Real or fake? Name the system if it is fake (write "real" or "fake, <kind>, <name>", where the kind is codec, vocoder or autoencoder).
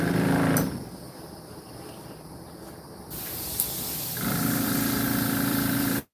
fake, vocoder, BigVGAN v2